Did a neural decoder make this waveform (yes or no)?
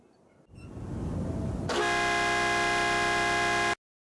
no